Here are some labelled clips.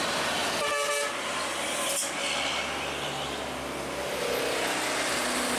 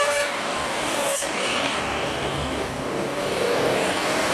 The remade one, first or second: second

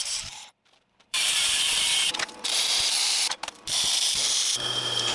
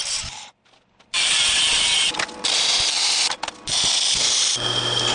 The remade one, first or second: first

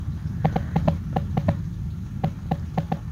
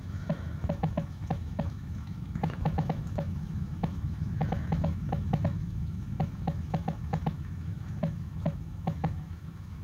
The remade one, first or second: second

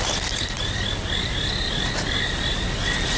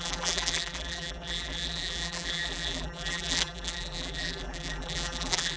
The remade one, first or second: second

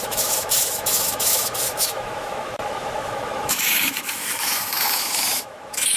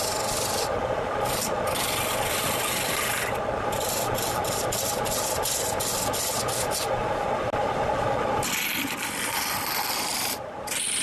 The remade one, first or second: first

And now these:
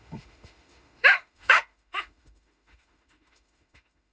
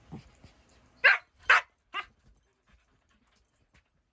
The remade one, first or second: first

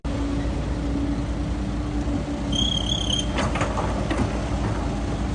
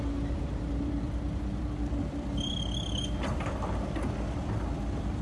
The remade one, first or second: second